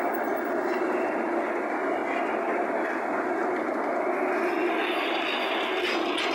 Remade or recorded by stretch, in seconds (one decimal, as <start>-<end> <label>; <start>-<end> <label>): 0.0-6.3 recorded